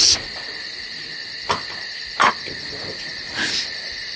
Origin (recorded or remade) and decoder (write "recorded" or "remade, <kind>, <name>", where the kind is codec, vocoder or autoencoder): recorded